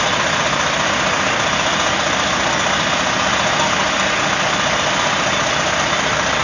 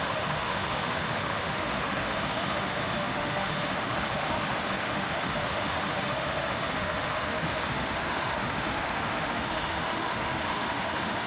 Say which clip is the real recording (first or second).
first